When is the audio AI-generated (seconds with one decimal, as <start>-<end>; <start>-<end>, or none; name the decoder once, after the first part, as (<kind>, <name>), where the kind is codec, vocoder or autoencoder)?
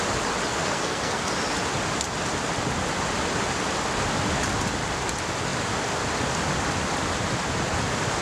0.5-1.3 (codec, SNAC)